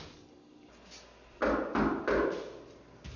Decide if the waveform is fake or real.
real